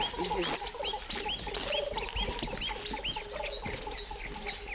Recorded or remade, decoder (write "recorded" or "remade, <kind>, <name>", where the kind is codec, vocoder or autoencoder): recorded